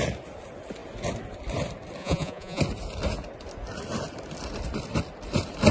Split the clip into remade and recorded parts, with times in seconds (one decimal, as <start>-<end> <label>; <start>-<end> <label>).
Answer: 0.0-2.0 recorded; 2.0-2.6 remade; 2.6-5.7 recorded